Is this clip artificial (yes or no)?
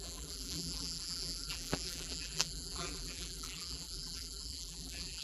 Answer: yes